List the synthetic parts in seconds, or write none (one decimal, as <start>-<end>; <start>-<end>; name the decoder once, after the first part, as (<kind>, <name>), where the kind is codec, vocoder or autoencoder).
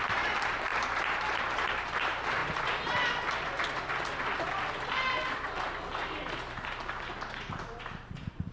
0.0-2.4 (vocoder, BigVGAN v2); 7.4-8.5